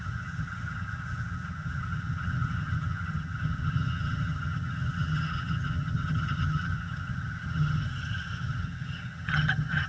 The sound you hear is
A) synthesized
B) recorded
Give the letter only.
A